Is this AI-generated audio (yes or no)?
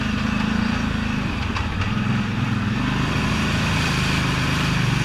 no